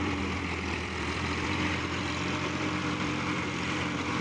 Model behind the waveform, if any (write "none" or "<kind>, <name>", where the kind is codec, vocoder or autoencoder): vocoder, BigVGAN v2